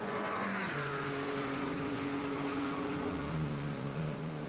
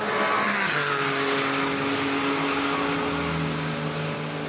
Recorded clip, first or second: second